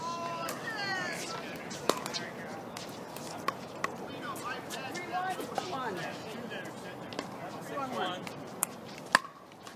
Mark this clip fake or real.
real